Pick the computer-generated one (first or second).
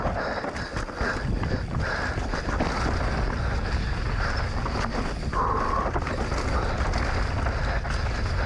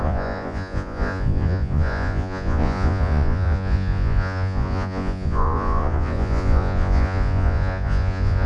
second